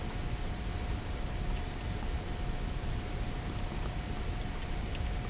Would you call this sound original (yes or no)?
yes